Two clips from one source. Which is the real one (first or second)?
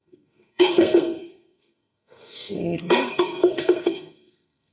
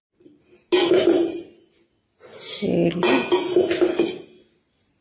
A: second